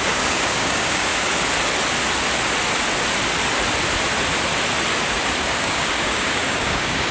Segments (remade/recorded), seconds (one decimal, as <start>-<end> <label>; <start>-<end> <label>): 0.0-1.1 remade; 1.1-5.4 recorded; 5.4-7.1 remade